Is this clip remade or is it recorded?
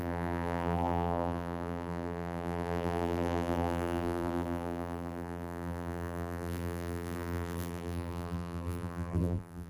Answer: remade